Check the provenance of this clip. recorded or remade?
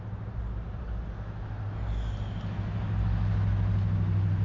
recorded